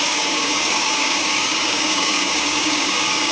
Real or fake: fake